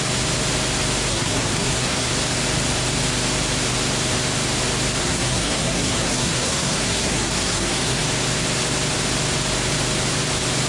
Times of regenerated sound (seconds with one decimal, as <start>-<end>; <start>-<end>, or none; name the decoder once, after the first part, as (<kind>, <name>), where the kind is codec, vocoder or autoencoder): 1.1-2.1 (codec, SNAC); 5.0-8.0